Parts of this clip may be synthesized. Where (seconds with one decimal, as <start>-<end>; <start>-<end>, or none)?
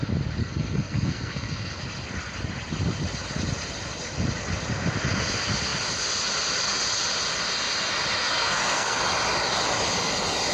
0.4-1.8; 8.2-9.0